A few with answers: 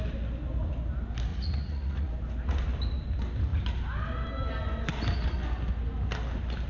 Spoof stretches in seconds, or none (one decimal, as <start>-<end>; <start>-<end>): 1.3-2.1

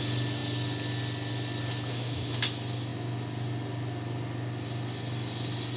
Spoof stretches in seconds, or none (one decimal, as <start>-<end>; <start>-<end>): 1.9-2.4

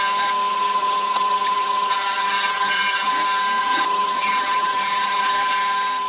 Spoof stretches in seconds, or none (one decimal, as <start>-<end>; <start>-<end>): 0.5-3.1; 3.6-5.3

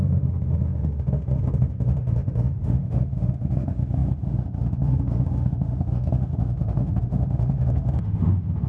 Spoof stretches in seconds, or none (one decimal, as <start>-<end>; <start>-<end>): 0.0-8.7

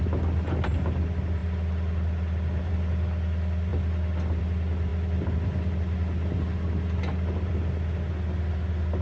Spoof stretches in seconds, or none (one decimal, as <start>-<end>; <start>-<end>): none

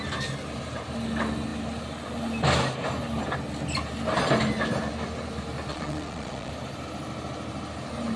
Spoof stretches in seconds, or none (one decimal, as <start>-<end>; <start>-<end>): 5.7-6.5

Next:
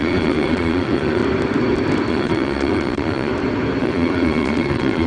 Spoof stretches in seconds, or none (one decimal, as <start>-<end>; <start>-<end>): 0.0-1.2; 2.1-3.3; 3.8-5.1

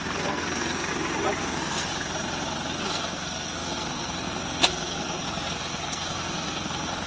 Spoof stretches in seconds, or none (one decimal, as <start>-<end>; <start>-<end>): 0.0-0.9; 1.4-1.9; 2.8-7.1